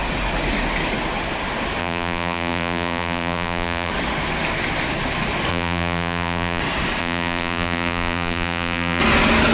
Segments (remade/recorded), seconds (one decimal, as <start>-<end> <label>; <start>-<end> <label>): 0.0-1.8 recorded; 1.8-3.9 remade; 3.9-5.5 recorded; 5.5-6.6 remade; 6.6-7.0 recorded; 7.0-9.0 remade; 9.0-9.5 recorded